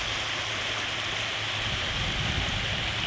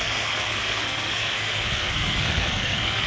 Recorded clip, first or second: first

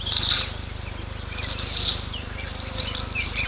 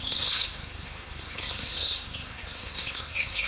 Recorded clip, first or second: first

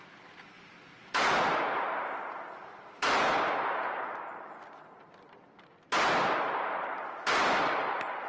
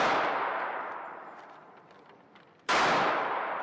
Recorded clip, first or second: first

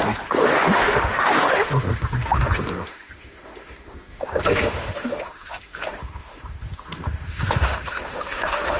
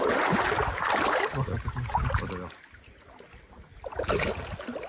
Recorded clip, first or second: second